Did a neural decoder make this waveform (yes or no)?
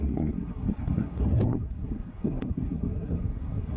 yes